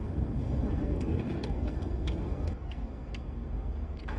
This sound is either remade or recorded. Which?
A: remade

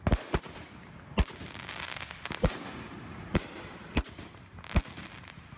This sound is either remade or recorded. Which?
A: recorded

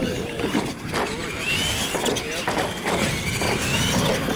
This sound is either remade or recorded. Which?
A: recorded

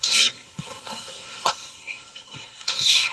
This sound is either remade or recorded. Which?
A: remade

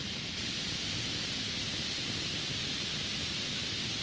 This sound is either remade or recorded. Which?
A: recorded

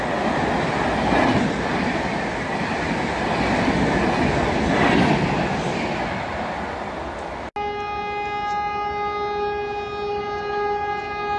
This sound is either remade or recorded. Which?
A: recorded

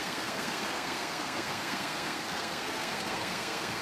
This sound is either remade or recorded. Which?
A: remade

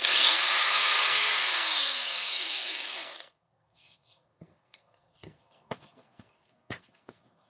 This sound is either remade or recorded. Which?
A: remade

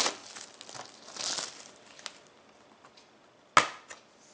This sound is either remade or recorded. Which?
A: recorded